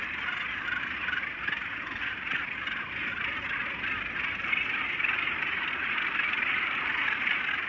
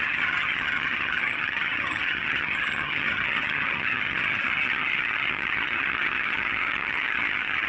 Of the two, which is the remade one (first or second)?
second